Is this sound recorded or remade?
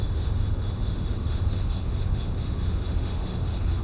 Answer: remade